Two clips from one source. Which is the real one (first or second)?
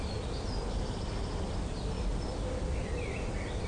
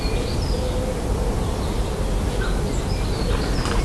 second